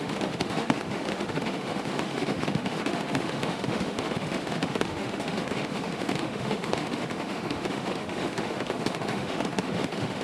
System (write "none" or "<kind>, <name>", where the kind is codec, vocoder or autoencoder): autoencoder, DAC-VAE